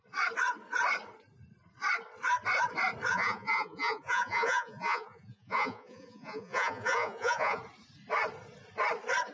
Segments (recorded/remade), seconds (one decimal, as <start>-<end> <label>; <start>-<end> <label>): 0.0-3.1 recorded; 3.1-7.6 remade; 7.6-9.3 recorded